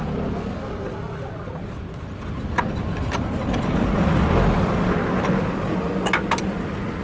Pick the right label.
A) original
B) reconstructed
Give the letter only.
A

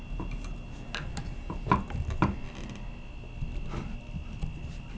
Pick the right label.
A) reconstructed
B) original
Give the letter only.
B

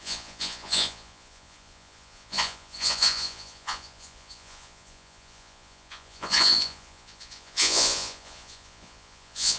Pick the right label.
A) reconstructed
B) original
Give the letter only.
A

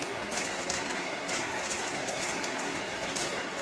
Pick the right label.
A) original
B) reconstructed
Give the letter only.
B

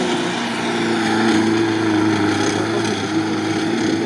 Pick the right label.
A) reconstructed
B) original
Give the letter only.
B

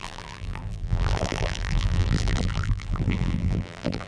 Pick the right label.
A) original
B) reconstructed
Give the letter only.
B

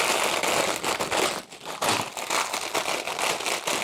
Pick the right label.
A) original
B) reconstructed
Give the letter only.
A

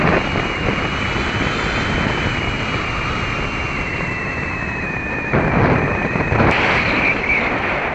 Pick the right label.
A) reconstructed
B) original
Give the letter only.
B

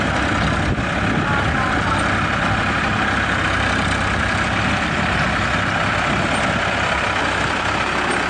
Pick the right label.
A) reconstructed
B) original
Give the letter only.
B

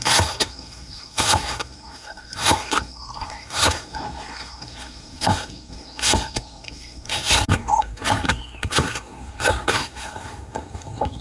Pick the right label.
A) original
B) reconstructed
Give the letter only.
B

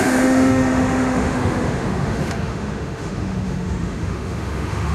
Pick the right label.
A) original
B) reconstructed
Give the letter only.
B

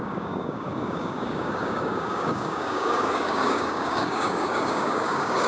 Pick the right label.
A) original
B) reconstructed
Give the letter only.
B